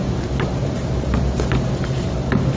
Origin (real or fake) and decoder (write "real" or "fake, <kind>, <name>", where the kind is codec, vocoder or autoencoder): real